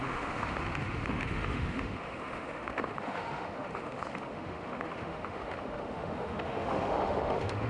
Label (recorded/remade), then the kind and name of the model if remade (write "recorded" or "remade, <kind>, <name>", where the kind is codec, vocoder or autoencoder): remade, autoencoder, DAC-VAE